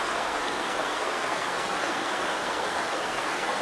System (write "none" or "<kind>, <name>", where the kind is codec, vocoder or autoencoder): codec, SNAC